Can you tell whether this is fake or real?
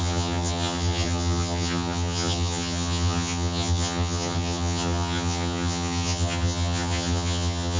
fake